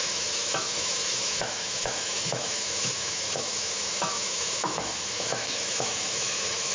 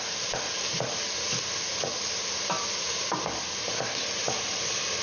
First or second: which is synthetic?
first